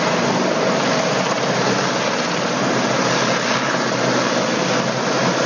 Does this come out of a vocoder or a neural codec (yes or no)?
no